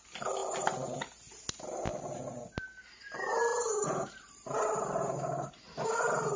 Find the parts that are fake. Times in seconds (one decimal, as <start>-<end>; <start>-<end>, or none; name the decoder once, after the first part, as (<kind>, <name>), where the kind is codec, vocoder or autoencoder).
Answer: 3.5-6.4 (vocoder, BigVGAN v2)